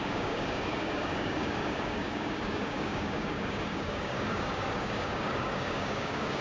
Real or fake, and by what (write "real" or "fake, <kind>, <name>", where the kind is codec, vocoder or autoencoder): fake, codec, DAC